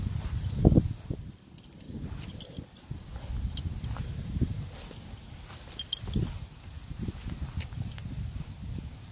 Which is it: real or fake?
real